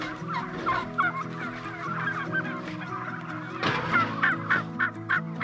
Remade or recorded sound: recorded